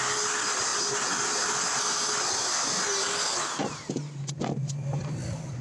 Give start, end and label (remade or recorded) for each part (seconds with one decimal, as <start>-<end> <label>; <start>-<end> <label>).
0.0-3.6 recorded; 3.6-5.6 remade